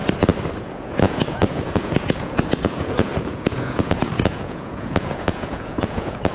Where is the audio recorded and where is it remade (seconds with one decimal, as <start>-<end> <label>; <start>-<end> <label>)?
0.0-0.6 recorded; 0.6-6.3 remade